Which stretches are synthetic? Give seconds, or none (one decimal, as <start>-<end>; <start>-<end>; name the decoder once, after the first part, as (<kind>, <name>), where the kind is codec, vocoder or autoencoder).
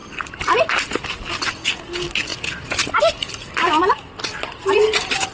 none